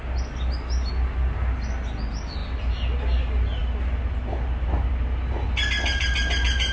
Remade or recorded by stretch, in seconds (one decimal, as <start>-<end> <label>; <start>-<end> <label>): 0.0-6.7 recorded